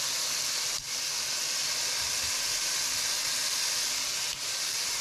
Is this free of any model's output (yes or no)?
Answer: yes